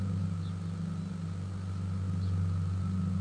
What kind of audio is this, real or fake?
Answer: real